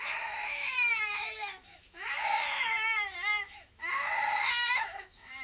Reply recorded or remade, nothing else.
remade